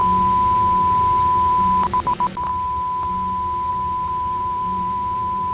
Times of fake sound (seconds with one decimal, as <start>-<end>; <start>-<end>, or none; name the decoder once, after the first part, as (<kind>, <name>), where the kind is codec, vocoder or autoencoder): 1.5-2.5 (vocoder, BigVGAN v2); 3.7-5.5